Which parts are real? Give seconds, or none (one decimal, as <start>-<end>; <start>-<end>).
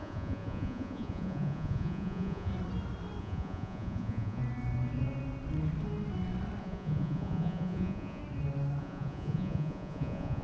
2.5-3.2; 4.4-6.6; 8.2-8.8